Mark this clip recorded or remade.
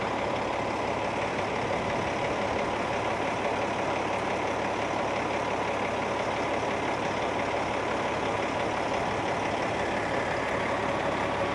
recorded